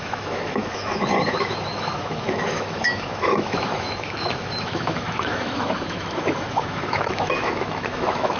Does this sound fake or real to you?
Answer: fake